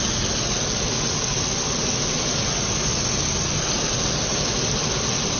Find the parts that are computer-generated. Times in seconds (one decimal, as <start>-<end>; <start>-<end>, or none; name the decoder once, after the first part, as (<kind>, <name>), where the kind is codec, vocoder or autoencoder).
none